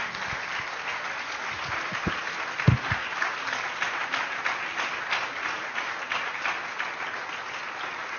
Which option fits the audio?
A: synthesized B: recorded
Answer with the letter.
B